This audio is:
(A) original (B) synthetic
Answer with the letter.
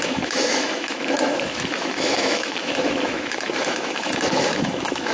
B